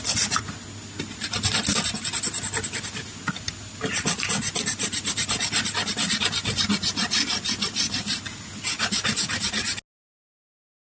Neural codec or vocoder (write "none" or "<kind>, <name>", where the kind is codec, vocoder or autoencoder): none